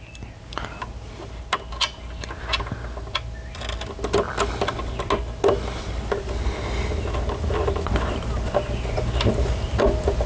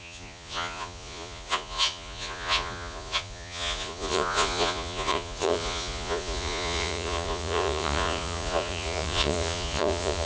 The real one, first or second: first